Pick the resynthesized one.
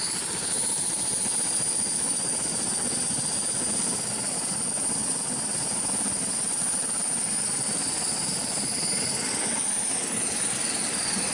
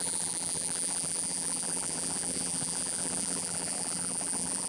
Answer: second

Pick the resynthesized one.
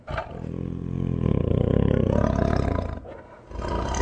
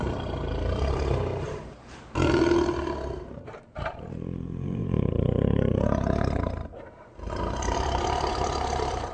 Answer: second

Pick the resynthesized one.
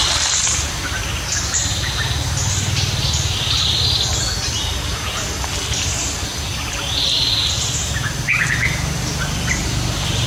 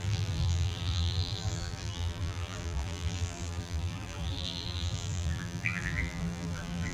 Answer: second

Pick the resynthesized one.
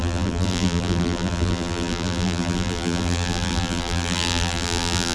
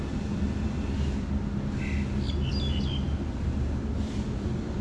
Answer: first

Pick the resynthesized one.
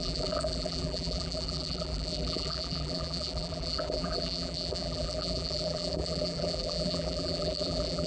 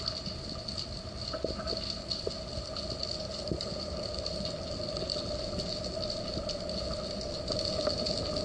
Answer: first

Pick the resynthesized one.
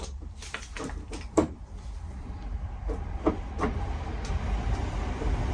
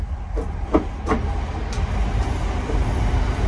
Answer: first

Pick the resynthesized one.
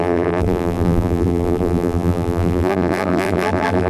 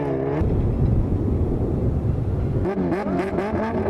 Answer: first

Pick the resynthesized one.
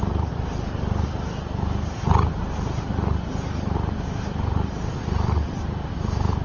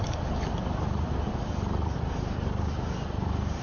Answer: first